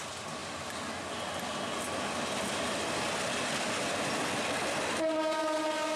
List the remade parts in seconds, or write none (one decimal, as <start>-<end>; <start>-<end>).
none